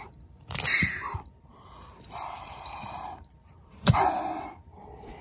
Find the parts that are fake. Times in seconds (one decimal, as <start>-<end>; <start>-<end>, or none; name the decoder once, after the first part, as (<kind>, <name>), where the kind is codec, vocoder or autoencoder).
1.0-4.1 (vocoder, BigVGAN v2)